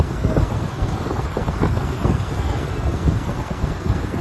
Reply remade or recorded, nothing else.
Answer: remade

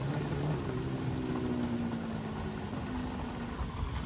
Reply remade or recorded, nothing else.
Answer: recorded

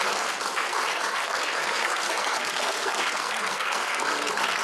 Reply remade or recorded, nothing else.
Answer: remade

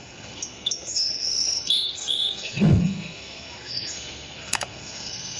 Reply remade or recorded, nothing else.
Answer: remade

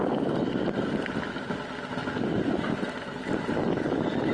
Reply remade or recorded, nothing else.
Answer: recorded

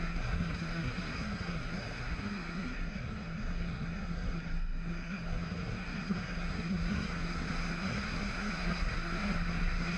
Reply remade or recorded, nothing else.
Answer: remade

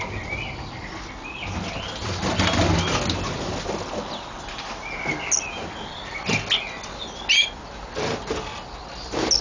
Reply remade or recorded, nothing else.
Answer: recorded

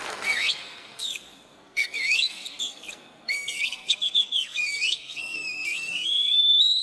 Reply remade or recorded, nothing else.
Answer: remade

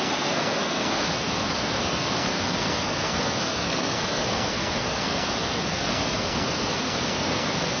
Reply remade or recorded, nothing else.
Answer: remade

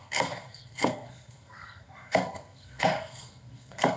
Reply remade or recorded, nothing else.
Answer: remade